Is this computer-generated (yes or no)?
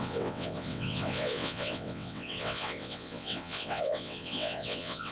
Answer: yes